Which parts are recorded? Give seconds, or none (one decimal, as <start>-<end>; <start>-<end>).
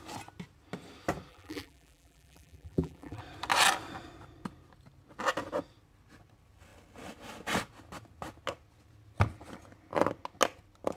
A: 0.0-1.3; 3.2-11.0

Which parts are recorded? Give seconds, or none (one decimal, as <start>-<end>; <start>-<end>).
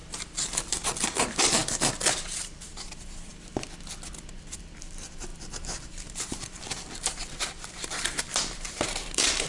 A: 1.6-2.4; 3.3-4.4